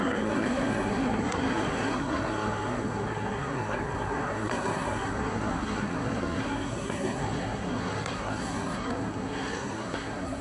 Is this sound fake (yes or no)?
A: yes